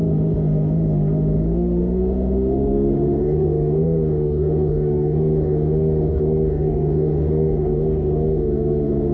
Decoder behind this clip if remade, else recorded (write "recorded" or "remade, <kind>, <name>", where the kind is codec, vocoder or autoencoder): remade, autoencoder, DAC-VAE